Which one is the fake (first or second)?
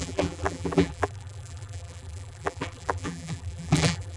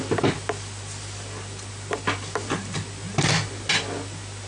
first